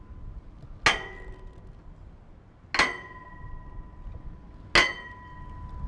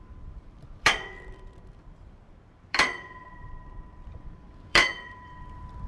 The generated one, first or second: second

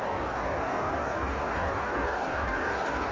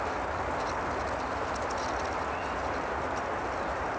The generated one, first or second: first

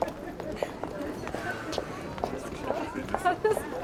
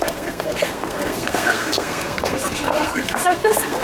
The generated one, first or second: second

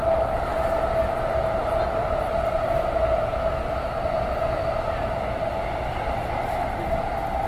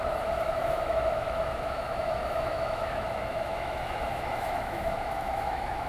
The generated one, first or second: second